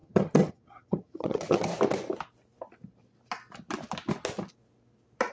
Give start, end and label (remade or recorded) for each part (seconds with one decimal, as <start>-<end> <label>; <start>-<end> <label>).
0.0-1.7 remade; 1.7-5.3 recorded